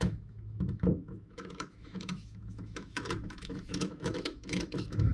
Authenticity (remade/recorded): remade